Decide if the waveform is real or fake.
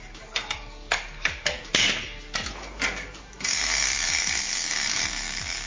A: fake